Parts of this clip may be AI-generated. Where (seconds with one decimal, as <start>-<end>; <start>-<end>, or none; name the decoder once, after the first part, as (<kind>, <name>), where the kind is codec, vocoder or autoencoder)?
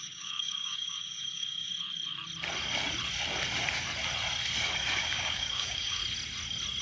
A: 0.0-1.7 (codec, DAC); 5.0-6.0